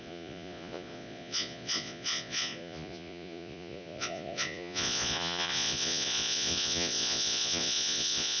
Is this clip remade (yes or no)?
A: yes